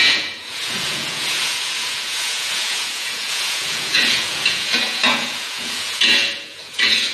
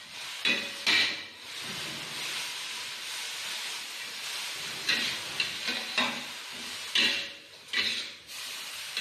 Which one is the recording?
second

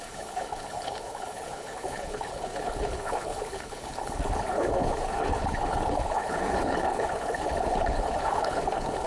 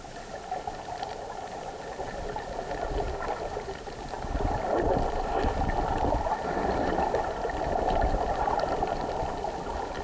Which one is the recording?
second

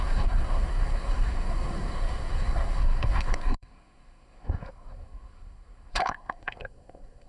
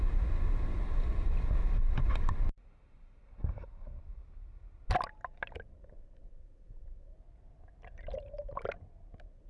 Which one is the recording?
second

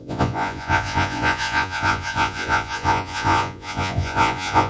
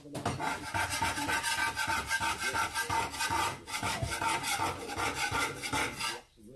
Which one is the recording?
second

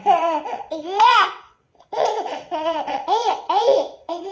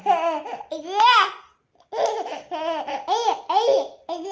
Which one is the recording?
second